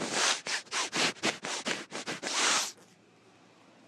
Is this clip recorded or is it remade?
recorded